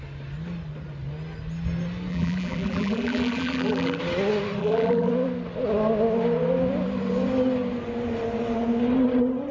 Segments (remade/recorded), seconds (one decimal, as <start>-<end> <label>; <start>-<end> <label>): 0.0-2.1 recorded; 2.1-4.0 remade; 4.0-4.6 recorded; 4.6-5.1 remade; 5.1-9.5 recorded